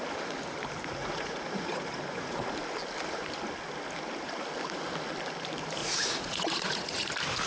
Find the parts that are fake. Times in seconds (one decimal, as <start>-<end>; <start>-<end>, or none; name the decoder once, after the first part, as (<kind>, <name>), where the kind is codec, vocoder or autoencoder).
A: 1.0-2.4 (vocoder, Vocos); 5.8-7.1